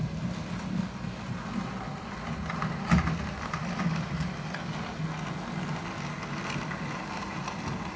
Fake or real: real